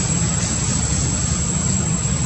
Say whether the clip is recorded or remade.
remade